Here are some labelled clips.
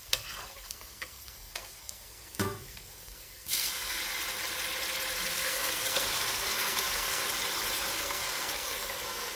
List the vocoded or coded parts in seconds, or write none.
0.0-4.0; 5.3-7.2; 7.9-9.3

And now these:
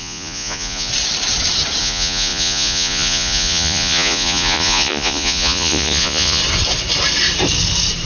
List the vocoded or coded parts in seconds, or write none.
0.0-0.9; 1.8-6.4